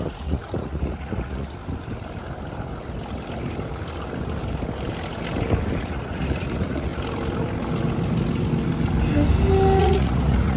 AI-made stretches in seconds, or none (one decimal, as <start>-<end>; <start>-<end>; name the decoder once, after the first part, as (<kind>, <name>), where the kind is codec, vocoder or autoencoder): 0.0-1.6 (vocoder, Vocos); 5.8-6.9; 9.8-10.6